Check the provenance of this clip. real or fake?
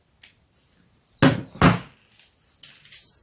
real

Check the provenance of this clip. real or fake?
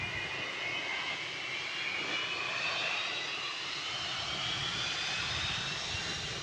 real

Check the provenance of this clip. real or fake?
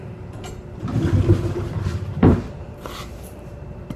fake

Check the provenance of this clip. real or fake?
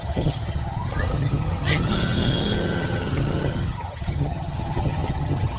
fake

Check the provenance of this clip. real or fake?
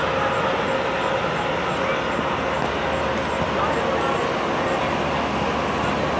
real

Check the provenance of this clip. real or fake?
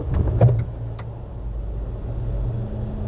real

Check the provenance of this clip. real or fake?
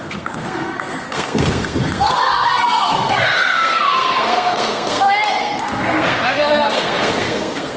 fake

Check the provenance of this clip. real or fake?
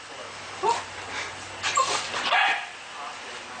real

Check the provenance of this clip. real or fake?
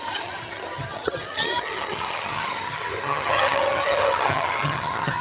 fake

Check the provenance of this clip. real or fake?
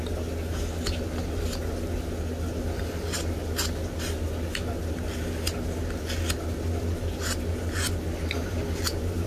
real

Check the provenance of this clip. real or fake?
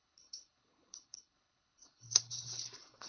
fake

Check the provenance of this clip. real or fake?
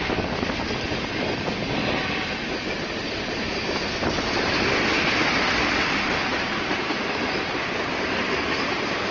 real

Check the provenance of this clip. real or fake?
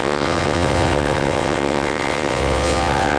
fake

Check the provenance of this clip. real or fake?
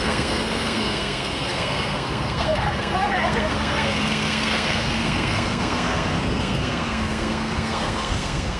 fake